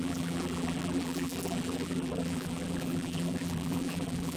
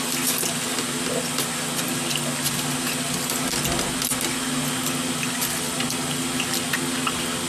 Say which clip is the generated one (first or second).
first